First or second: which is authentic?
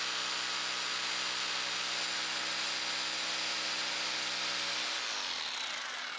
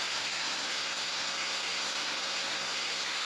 first